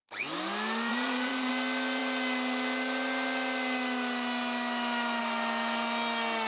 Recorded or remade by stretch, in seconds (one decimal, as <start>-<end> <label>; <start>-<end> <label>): 0.0-0.9 recorded; 0.9-1.5 remade; 1.5-6.5 recorded